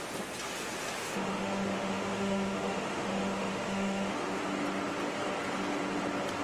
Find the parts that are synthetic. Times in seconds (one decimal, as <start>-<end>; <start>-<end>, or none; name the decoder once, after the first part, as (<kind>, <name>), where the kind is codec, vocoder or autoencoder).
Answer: 1.0-4.4 (autoencoder, DAC-VAE)